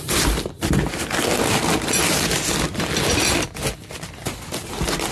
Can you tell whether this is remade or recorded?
recorded